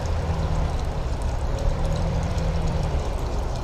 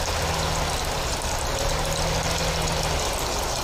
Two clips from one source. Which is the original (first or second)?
second